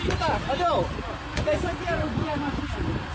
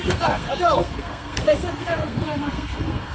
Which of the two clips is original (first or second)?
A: first